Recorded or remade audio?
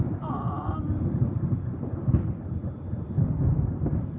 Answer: recorded